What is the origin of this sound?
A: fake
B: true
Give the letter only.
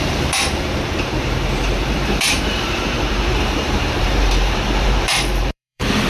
A